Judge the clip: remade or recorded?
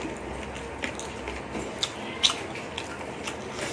recorded